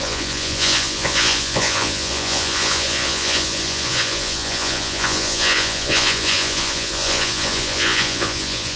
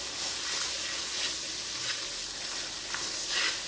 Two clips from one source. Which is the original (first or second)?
second